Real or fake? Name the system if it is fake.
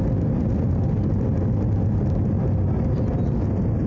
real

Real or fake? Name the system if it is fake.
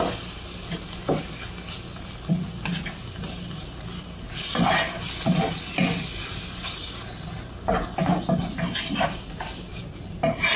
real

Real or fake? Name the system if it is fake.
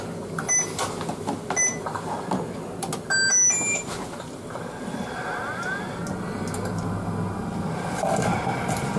real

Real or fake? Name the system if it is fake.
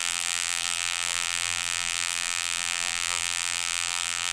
fake, vocoder, BigVGAN v2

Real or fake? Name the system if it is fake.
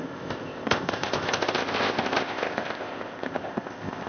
fake, codec, ZipCodec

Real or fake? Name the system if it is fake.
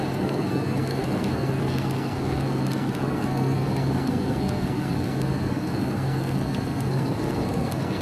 fake, codec, SNAC